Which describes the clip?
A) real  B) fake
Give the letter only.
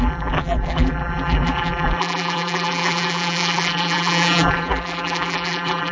B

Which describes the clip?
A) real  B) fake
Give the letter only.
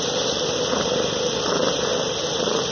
A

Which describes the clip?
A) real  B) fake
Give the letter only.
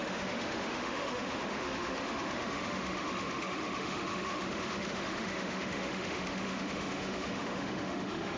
B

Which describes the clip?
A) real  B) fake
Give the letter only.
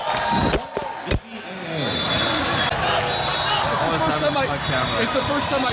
A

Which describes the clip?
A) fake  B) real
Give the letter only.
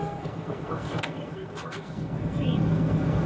A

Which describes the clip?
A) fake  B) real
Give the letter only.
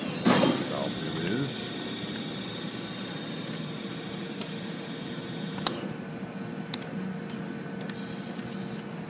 B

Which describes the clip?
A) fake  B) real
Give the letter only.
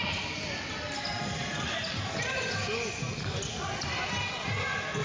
B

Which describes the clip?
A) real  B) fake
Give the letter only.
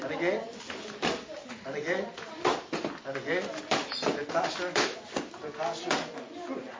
A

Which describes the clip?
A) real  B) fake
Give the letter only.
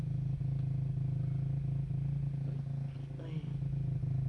A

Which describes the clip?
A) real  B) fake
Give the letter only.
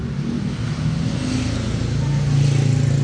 A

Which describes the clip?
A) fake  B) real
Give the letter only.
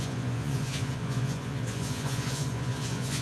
A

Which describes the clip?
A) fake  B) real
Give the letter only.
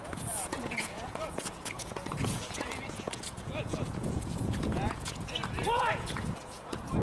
A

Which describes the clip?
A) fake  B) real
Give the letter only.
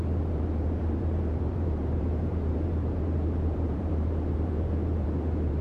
A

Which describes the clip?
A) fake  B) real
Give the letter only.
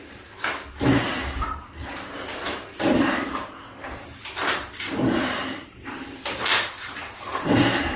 A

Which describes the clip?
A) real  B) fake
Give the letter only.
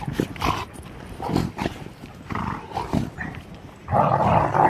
A